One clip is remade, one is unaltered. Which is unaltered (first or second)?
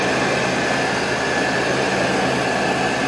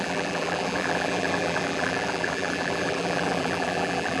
first